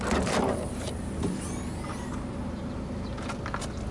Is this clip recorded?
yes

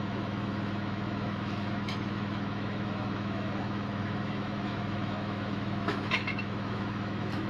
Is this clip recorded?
no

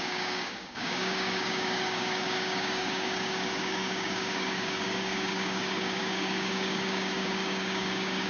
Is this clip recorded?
no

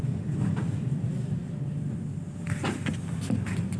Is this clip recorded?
yes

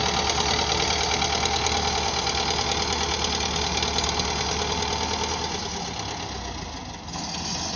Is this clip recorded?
yes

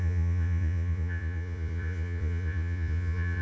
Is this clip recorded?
no